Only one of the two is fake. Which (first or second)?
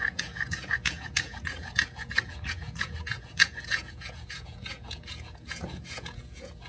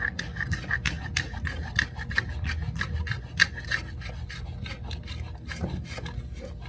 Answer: first